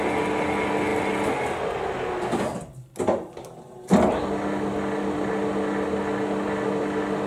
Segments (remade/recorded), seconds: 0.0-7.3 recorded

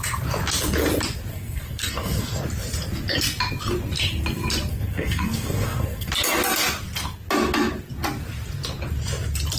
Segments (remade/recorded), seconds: 0.0-1.3 recorded; 1.3-2.4 remade; 2.4-4.7 recorded; 4.7-6.1 remade; 6.1-9.6 recorded

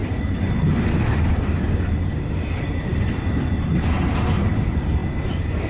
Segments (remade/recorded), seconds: 0.0-5.7 recorded

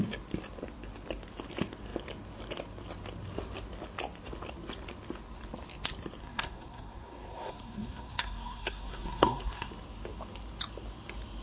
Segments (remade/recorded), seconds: 0.0-6.2 recorded; 6.2-9.7 remade; 9.7-11.4 recorded

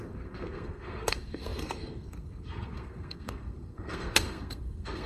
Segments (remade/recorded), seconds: 0.0-5.1 remade